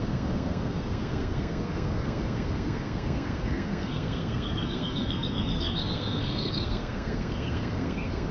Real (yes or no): no